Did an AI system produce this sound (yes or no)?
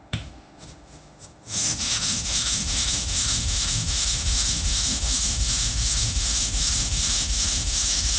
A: yes